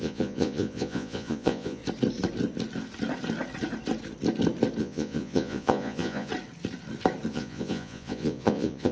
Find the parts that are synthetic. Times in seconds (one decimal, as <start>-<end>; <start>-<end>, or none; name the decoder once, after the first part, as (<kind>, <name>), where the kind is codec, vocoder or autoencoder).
0.0-1.8 (vocoder, Vocos); 4.8-6.3; 7.3-8.9

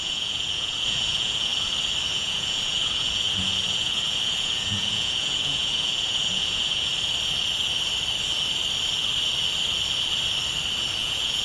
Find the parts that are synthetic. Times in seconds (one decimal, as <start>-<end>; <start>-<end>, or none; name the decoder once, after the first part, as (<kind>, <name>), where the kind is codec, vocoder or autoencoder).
0.0-1.5 (vocoder, Vocos); 2.1-6.9; 11.0-11.4

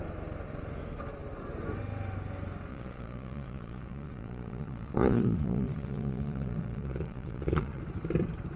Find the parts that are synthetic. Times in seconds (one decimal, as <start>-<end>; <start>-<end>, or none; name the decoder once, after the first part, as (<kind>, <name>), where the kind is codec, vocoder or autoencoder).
2.7-7.8 (vocoder, Vocos)